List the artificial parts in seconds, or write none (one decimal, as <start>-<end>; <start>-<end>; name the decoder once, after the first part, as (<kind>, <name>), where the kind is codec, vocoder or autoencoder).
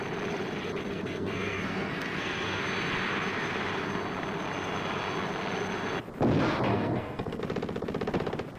0.9-2.6 (codec, SNAC); 6.7-7.4